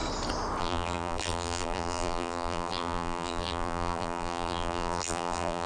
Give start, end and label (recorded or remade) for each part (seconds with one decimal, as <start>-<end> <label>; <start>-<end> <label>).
0.0-0.6 recorded; 0.6-5.7 remade